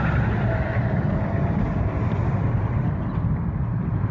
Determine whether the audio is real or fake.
real